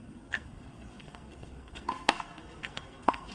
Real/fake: fake